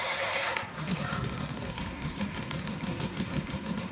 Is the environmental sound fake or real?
fake